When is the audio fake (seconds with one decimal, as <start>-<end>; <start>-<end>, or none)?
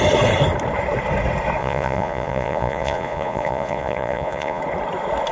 1.6-4.6